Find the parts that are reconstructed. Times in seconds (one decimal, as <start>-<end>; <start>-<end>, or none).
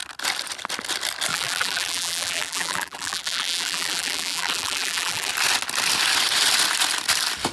1.3-5.3